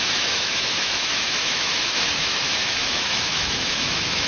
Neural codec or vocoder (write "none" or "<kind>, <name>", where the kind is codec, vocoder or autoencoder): autoencoder, DAC-VAE